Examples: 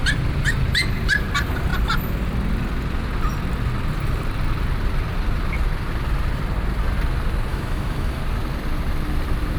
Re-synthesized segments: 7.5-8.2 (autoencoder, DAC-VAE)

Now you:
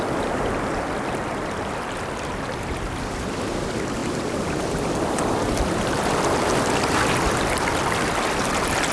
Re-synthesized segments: none

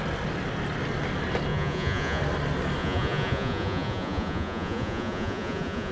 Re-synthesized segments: 1.5-2.2 (vocoder, Vocos); 2.8-5.9